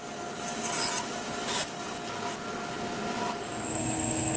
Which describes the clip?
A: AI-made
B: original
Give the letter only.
B